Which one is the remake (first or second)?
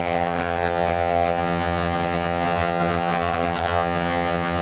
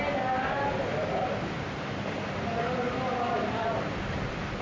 first